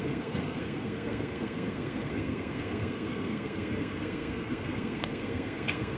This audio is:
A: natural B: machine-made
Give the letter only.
B